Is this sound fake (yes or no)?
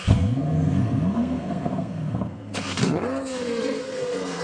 yes